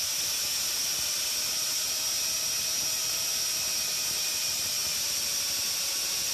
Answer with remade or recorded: recorded